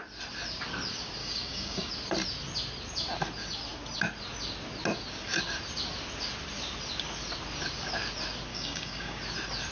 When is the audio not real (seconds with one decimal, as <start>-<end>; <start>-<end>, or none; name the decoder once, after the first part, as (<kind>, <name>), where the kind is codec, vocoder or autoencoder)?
1.2-1.9 (codec, DAC); 8.5-9.2